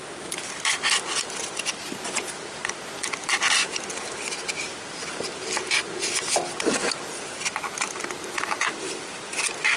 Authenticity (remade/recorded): remade